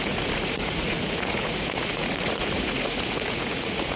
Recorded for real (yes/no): no